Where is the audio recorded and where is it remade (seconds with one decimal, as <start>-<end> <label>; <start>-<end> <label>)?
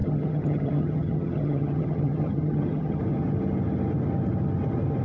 0.0-3.0 remade; 3.0-5.0 recorded